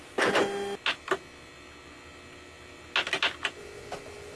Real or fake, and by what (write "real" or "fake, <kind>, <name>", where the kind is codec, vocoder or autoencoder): real